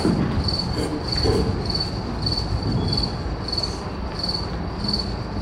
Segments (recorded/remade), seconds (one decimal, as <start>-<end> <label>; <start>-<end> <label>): 0.0-5.4 recorded